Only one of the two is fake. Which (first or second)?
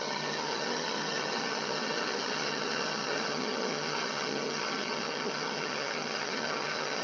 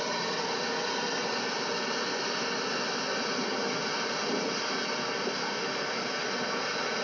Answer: first